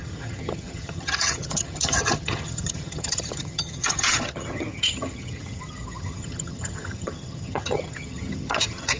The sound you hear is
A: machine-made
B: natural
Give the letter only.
A